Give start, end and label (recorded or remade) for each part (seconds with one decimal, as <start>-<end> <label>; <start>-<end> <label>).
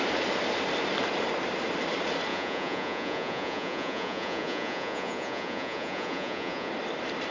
0.0-2.3 recorded; 2.3-6.7 remade; 6.7-7.3 recorded